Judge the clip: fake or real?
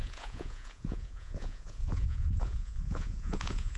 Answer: fake